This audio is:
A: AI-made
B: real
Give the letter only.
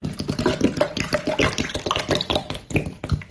B